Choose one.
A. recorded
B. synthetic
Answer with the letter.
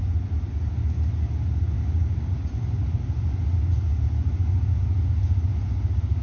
A